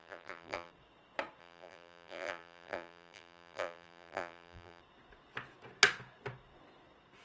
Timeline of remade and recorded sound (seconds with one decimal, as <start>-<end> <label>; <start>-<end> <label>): 0.0-0.7 remade; 0.7-1.4 recorded; 1.4-4.8 remade; 4.8-7.2 recorded